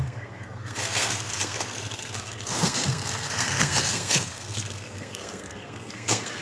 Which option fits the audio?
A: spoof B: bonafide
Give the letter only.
A